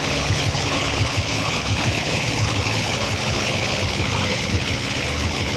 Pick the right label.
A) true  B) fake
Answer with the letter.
B